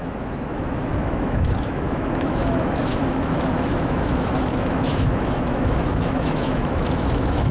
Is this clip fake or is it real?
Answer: fake